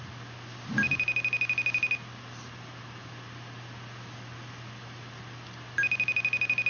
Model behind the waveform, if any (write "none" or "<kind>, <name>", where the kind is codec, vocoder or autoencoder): none